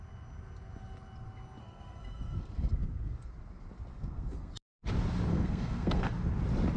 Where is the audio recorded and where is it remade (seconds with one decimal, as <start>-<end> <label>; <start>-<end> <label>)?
0.0-1.6 recorded; 1.6-3.3 remade; 3.3-3.9 recorded; 3.9-4.5 remade; 4.5-5.3 recorded; 5.3-6.1 remade; 6.1-6.8 recorded